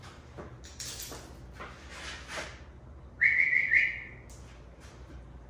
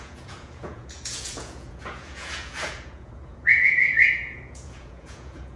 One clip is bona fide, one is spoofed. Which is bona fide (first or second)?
first